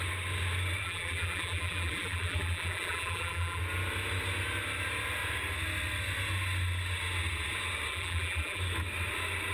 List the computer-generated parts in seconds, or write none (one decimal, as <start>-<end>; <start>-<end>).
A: 0.8-3.6; 7.9-8.6